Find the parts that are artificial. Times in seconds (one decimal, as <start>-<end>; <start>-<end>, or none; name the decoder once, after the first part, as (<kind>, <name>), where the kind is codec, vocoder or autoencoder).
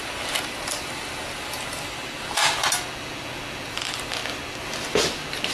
0.0-2.6 (vocoder, BigVGAN v2); 3.7-4.2